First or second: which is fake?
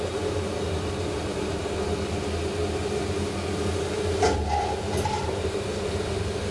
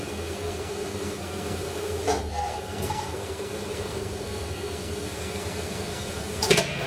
second